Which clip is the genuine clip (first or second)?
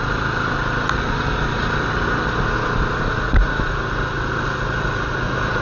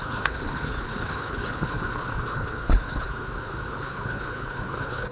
first